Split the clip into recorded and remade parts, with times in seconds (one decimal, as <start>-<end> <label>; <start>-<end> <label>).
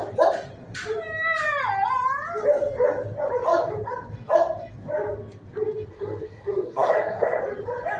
0.0-5.9 recorded; 5.9-7.4 remade; 7.4-8.0 recorded